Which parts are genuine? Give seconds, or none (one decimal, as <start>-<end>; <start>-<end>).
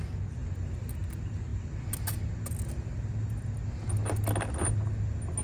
0.0-5.4